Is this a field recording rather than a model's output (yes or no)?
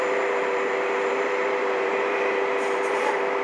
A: no